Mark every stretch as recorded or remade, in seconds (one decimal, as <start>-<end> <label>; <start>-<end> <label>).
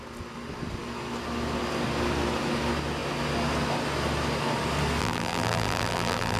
0.0-5.0 recorded; 5.0-6.4 remade